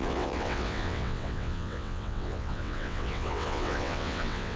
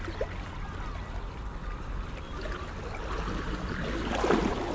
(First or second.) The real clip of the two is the second